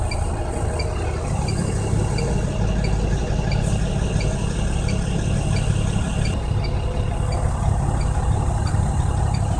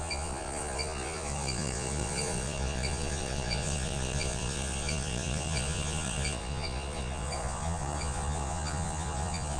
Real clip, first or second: first